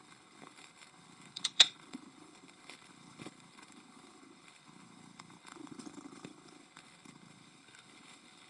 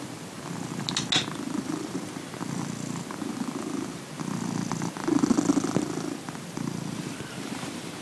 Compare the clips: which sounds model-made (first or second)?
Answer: first